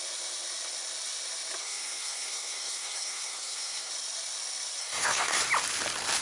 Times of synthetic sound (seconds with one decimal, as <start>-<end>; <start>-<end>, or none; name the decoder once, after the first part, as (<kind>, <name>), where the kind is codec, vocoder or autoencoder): 1.6-3.9 (codec, SNAC); 4.8-5.4